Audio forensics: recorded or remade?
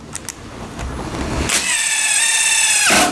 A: recorded